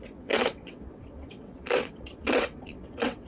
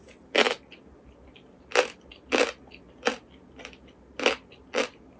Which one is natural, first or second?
second